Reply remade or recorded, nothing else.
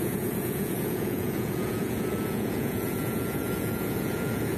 remade